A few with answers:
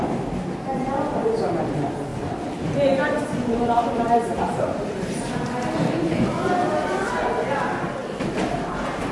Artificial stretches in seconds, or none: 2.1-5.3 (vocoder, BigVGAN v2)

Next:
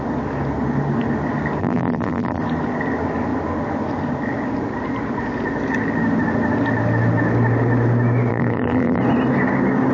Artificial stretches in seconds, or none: 1.6-2.4 (vocoder, BigVGAN v2); 8.3-9.0

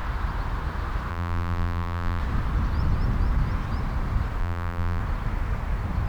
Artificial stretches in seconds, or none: 1.1-2.2 (vocoder, BigVGAN v2); 4.4-5.0

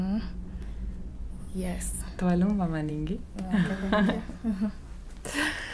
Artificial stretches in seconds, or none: none